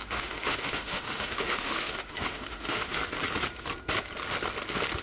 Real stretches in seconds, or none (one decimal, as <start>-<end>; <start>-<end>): 3.0-5.0